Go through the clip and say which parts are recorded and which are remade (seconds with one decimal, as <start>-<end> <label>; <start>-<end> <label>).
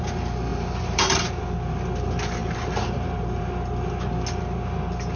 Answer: 0.0-0.5 recorded; 0.5-1.4 remade; 1.4-2.4 recorded; 2.4-3.4 remade; 3.4-5.2 recorded